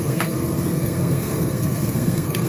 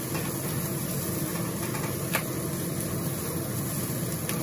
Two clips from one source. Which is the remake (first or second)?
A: first